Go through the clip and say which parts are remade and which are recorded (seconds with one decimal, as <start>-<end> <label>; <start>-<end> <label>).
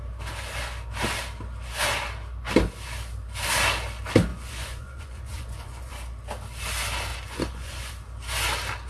0.0-4.3 recorded; 4.3-5.9 remade; 5.9-7.1 recorded; 7.1-7.9 remade; 7.9-8.9 recorded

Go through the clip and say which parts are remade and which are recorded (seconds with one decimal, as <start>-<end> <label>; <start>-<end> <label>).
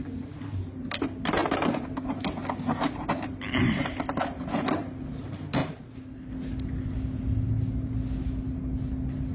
0.0-9.3 recorded